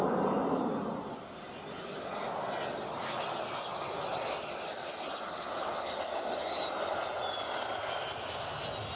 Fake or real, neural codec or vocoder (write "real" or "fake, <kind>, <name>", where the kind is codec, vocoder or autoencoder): real